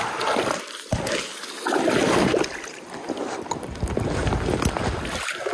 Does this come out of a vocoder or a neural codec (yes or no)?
no